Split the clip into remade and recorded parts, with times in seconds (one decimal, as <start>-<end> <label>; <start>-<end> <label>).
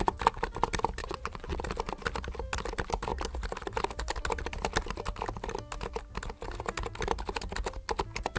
0.0-1.0 recorded; 1.0-1.6 remade; 1.6-8.4 recorded